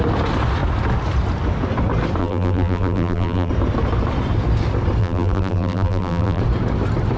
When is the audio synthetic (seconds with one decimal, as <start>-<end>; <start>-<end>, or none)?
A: 2.2-3.5; 5.0-6.4